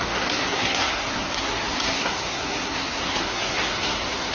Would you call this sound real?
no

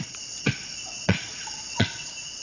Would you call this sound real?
no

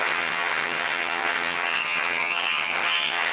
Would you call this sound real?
no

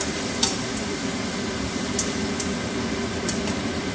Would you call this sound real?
no